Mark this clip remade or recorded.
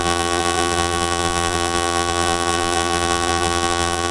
remade